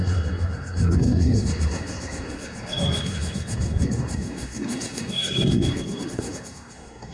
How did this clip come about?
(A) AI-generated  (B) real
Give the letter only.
A